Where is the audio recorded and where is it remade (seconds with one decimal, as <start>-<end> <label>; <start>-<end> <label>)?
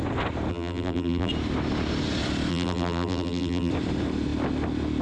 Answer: 0.0-0.5 recorded; 0.5-1.3 remade; 1.3-2.5 recorded; 2.5-3.7 remade; 3.7-5.0 recorded